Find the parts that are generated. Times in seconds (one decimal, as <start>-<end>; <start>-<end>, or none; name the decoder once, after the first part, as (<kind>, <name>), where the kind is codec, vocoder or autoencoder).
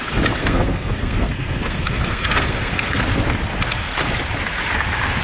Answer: 0.4-3.0 (codec, SNAC)